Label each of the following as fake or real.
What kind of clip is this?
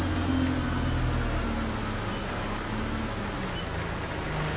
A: real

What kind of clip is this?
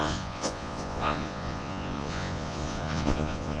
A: fake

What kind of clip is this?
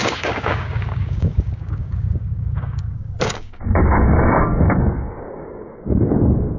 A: fake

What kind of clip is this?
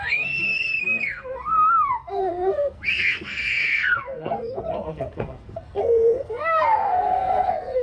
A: fake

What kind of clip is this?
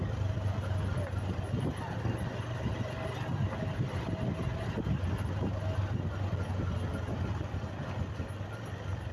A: real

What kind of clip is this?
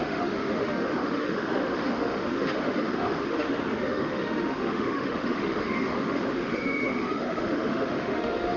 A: fake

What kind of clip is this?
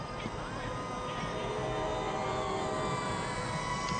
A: real